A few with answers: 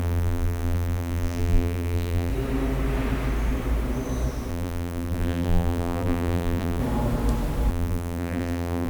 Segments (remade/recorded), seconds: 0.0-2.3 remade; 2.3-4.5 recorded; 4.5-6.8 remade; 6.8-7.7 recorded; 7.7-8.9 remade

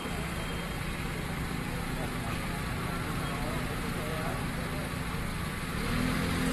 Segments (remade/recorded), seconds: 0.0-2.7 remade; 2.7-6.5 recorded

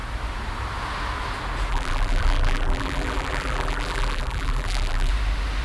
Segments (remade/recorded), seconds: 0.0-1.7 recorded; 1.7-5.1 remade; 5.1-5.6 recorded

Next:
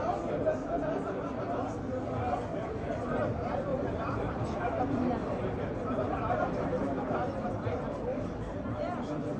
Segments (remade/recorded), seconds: 0.0-3.7 recorded; 3.7-4.8 remade; 4.8-5.2 recorded; 5.2-8.3 remade; 8.3-9.4 recorded

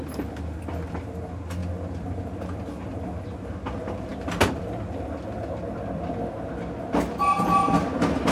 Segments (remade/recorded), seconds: 0.0-1.6 recorded; 1.6-2.2 remade; 2.2-4.1 recorded; 4.1-6.5 remade; 6.5-8.3 recorded

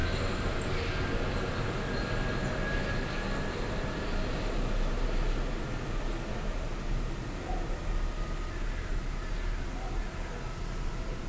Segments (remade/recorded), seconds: 0.0-11.3 recorded

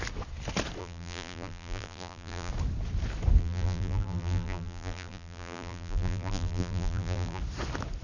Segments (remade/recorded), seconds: 0.0-0.8 recorded; 0.8-2.5 remade; 2.5-3.4 recorded; 3.4-7.4 remade; 7.4-8.0 recorded

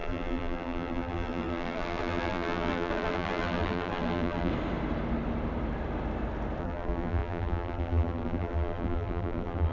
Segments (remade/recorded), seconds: 0.0-4.5 remade; 4.5-6.6 recorded; 6.6-9.7 remade